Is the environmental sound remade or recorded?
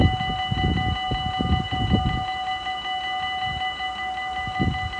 recorded